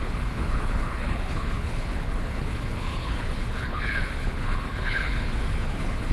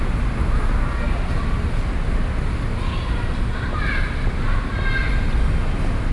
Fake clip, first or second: first